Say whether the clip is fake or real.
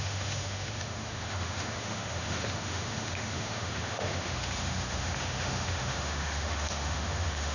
fake